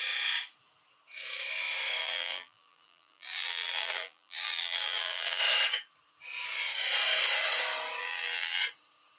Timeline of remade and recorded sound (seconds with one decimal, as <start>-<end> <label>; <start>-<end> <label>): 0.0-2.0 recorded; 2.0-5.4 remade; 5.4-8.0 recorded; 8.0-8.6 remade; 8.6-9.2 recorded